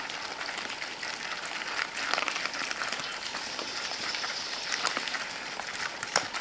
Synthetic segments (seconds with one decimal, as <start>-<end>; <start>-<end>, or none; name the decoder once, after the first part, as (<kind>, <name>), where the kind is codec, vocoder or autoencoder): 3.6-4.3 (vocoder, BigVGAN v2)